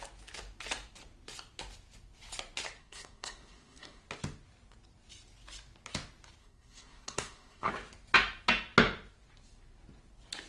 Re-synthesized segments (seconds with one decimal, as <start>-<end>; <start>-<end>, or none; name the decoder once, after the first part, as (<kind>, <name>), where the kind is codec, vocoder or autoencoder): 2.8-4.0 (codec, SNAC); 6.4-7.7